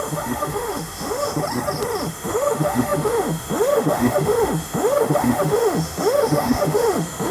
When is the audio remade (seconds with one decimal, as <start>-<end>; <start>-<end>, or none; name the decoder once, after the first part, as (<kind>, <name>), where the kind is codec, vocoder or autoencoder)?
0.0-1.4 (autoencoder, DAC-VAE); 2.1-7.3